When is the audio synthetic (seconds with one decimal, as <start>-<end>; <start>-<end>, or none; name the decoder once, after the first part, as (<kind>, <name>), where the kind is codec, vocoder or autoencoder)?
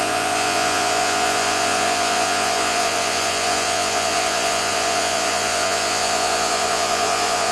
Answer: 0.0-7.5 (vocoder, Vocos)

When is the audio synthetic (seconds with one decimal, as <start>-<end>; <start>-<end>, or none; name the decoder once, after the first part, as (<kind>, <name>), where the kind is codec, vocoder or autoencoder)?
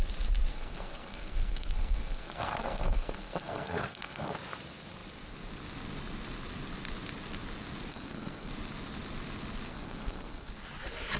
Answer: 0.5-4.3 (codec, SNAC); 7.9-8.5; 9.7-10.5